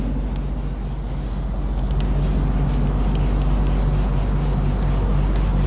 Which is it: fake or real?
real